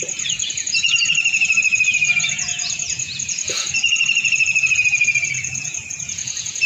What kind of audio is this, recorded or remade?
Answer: remade